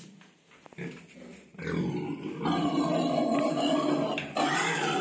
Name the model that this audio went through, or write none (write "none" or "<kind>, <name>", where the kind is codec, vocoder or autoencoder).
none